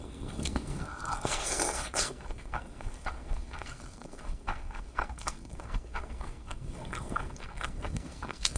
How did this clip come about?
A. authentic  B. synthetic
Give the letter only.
B